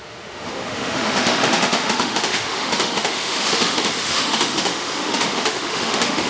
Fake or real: fake